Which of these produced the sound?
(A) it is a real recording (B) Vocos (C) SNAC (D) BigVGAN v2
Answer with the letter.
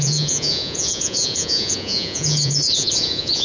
B